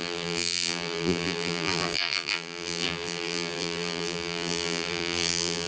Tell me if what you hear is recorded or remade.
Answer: remade